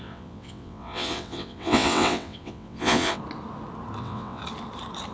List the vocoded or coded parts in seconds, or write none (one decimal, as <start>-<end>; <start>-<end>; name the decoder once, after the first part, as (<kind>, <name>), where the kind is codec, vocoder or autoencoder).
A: 0.0-3.2 (vocoder, WaveNeXt); 4.0-4.4